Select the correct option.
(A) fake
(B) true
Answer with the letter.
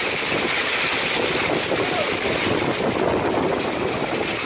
B